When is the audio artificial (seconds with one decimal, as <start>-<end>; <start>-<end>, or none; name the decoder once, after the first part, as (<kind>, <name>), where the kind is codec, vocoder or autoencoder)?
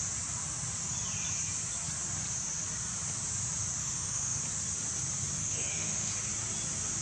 3.8-4.4 (autoencoder, DAC-VAE); 5.4-6.1